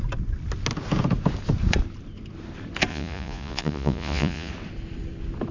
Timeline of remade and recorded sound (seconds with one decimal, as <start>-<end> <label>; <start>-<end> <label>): 0.0-2.9 recorded; 2.9-4.5 remade; 4.5-5.5 recorded